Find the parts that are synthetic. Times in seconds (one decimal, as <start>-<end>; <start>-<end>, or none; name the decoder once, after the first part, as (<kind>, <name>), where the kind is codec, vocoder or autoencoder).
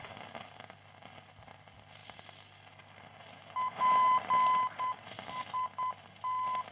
none